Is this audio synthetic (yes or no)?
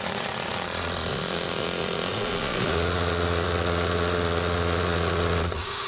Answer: yes